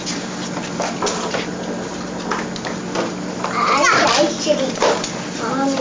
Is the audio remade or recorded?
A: recorded